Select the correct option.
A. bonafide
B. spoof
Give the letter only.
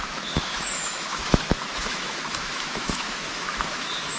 B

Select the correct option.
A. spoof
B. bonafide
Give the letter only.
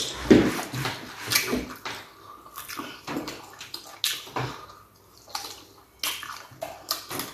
B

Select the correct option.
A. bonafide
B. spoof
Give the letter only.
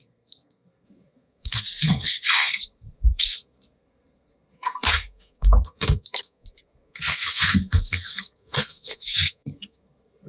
B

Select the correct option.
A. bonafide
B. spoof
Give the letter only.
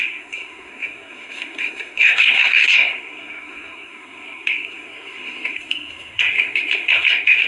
B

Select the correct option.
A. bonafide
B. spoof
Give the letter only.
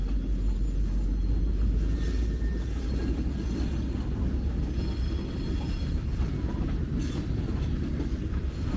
A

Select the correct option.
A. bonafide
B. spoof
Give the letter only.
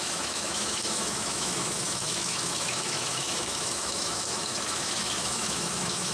B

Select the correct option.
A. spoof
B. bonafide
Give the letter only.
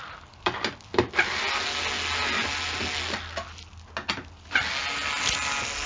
B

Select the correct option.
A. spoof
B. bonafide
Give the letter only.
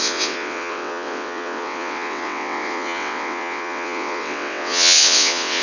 A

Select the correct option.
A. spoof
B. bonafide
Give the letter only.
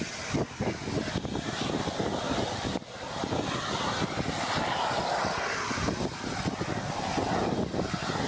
B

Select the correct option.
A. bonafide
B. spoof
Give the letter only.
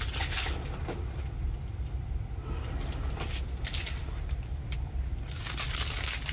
A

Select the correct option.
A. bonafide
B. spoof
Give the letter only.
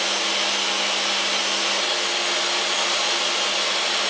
A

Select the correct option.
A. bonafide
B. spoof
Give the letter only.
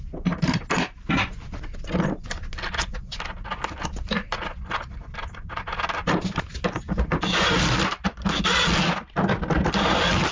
A